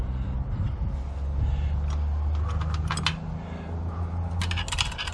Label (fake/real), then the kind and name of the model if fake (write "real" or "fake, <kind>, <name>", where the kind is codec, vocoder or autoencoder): real